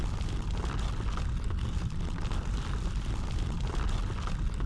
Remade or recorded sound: recorded